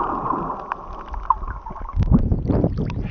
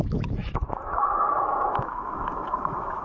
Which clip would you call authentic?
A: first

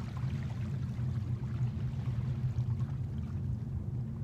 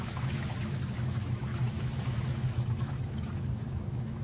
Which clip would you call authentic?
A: first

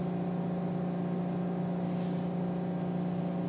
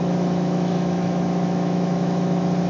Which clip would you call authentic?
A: first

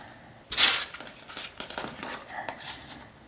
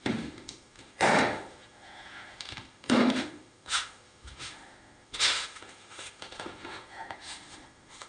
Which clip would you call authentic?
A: first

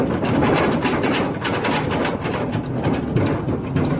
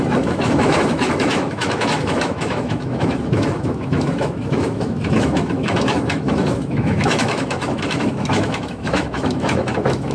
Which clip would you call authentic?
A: first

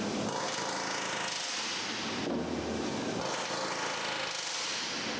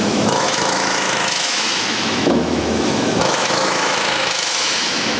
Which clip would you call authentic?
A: first